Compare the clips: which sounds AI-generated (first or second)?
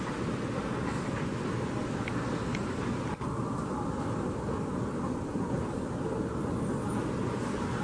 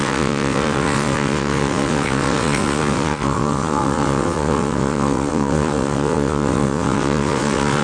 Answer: second